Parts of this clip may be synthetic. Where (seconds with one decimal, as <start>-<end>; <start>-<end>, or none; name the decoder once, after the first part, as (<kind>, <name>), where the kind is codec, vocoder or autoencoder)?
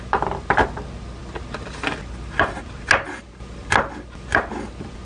none